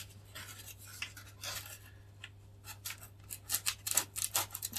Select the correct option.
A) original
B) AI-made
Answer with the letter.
A